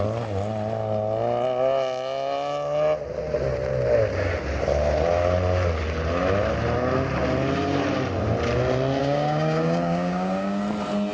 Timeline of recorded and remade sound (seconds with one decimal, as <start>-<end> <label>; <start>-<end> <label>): 0.0-9.0 recorded; 9.0-10.6 remade; 10.6-11.1 recorded